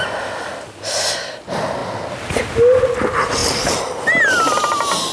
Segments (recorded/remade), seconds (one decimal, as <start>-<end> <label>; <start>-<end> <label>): 0.0-5.1 recorded